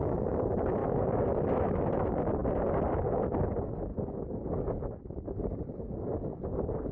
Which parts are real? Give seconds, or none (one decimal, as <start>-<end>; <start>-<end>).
0.0-0.8; 1.8-6.9